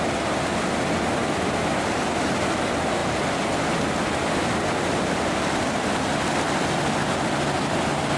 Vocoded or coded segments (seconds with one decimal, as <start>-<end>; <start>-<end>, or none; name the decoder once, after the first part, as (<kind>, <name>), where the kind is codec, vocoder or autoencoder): none